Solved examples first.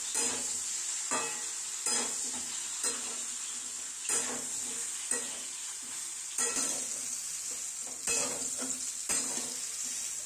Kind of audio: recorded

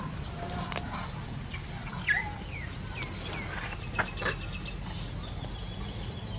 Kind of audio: recorded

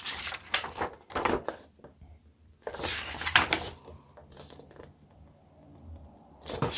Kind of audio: remade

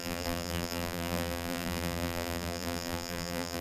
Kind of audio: remade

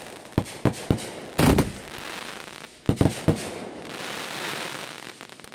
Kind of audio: recorded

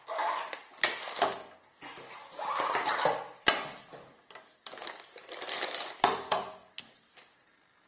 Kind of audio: recorded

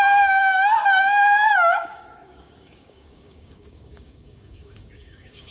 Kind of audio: remade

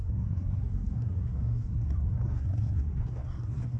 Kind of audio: remade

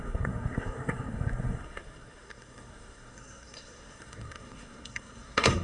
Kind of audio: remade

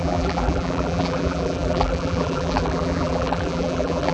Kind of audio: remade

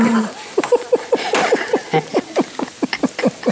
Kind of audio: recorded